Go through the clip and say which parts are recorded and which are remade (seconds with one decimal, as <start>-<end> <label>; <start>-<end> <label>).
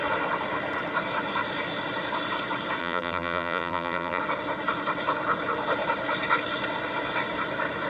0.0-2.8 recorded; 2.8-4.2 remade; 4.2-7.9 recorded